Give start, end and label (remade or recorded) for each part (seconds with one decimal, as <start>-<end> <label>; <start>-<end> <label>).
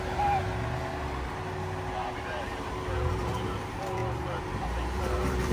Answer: 0.0-0.4 remade; 0.4-2.0 recorded; 2.0-4.0 remade; 4.0-5.0 recorded; 5.0-5.5 remade